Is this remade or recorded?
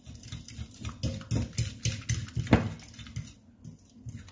recorded